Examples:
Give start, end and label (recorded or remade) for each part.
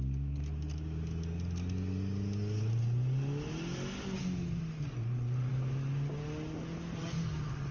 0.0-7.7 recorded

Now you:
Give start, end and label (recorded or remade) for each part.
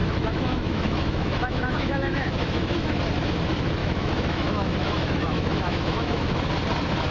0.0-3.0 remade; 3.0-3.8 recorded; 3.8-6.5 remade; 6.5-7.1 recorded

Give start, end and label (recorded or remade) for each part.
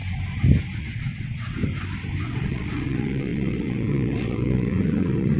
0.0-0.8 recorded; 0.8-1.6 remade; 1.6-2.2 recorded; 2.2-5.4 remade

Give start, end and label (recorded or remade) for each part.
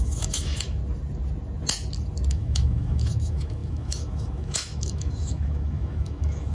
0.0-0.8 remade; 0.8-2.3 recorded; 2.3-6.5 remade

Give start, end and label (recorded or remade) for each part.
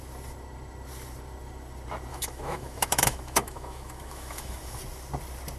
0.0-2.1 recorded; 2.1-4.8 remade; 4.8-5.6 recorded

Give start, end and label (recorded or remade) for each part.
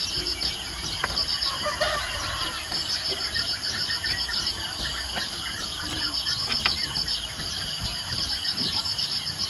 0.0-9.5 remade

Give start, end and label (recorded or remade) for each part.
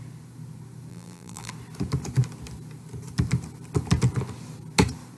0.0-0.9 recorded; 0.9-1.5 remade; 1.5-5.2 recorded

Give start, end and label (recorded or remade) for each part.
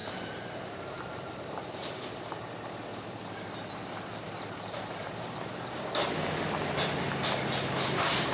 0.0-2.0 remade; 2.0-2.9 recorded; 2.9-5.8 remade; 5.8-8.3 recorded